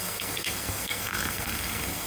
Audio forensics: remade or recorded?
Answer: remade